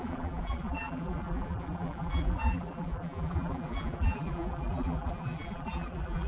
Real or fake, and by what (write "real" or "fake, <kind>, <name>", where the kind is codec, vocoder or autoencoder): fake, vocoder, BigVGAN v2